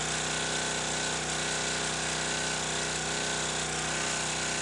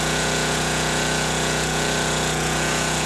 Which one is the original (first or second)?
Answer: first